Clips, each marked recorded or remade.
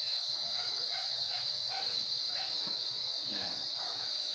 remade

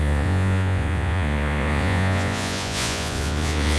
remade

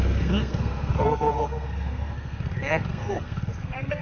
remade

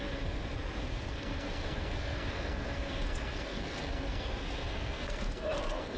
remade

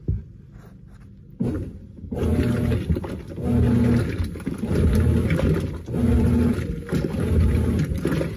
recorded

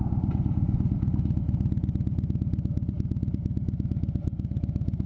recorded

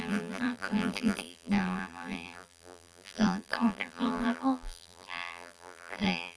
remade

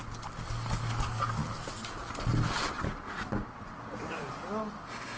recorded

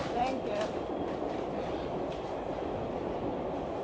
recorded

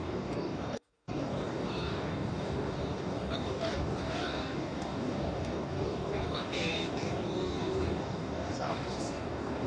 remade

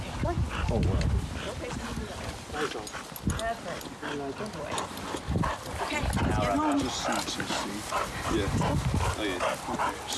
recorded